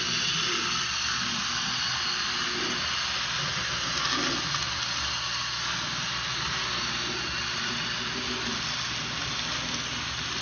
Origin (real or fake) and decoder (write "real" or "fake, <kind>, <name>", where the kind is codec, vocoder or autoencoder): real